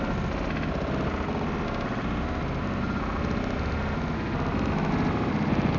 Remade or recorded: recorded